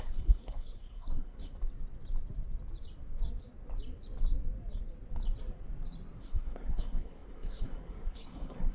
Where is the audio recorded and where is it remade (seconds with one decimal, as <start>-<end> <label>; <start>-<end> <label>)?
0.0-1.5 remade; 1.5-6.2 recorded; 6.2-8.7 remade